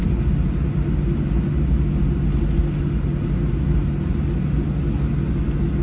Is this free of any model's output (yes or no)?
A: yes